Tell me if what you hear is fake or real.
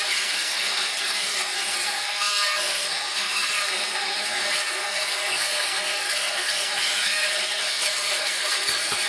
fake